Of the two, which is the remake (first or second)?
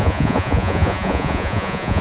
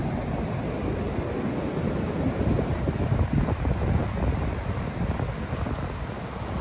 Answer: first